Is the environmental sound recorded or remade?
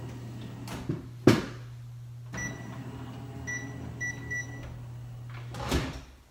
recorded